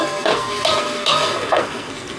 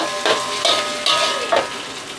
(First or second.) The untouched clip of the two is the second